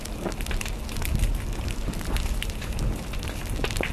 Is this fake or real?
real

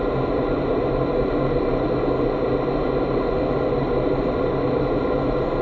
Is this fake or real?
real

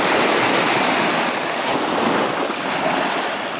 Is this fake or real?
real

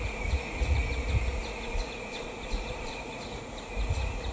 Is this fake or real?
fake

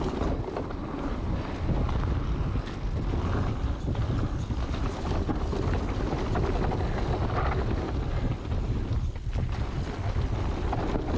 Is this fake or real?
real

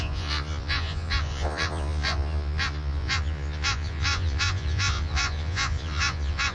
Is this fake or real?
fake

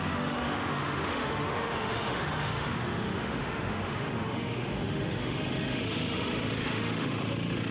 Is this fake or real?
fake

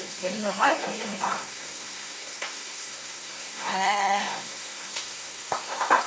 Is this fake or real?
fake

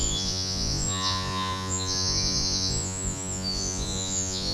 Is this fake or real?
fake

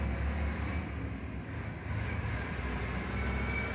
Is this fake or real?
real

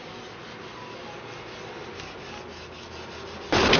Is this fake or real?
real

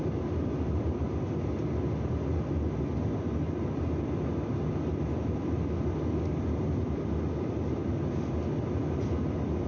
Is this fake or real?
real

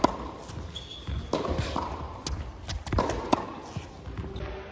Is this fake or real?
real